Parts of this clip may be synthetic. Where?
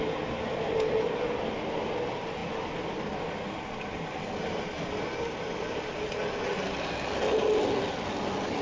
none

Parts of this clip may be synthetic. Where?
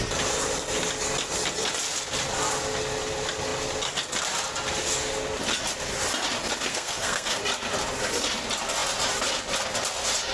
6.7-7.4 (codec, SNAC)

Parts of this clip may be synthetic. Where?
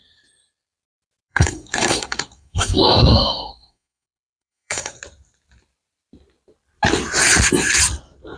1.3-5.0 (codec, SNAC)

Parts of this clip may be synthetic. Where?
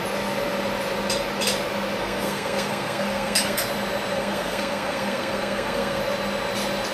2.0-3.6 (codec, SNAC); 4.1-6.0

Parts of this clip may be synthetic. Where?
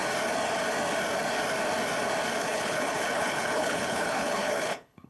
2.4-5.1 (codec, HILCodec)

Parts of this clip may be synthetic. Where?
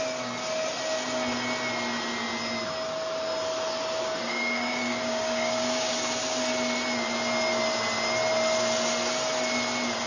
4.0-5.9 (codec, DAC)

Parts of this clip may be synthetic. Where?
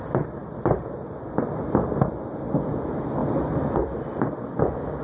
none